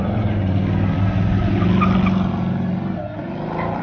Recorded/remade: recorded